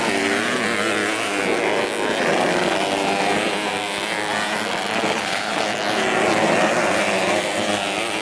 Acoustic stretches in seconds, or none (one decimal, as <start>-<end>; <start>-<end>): 0.0-5.1; 5.6-8.2